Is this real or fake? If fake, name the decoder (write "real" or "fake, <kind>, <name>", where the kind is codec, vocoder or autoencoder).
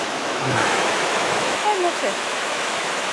fake, autoencoder, DAC-VAE